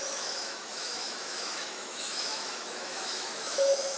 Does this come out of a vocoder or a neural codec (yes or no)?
yes